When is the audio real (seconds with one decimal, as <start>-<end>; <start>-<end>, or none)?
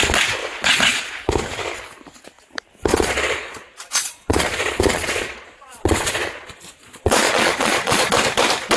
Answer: 0.0-0.4; 1.1-2.9; 8.1-8.8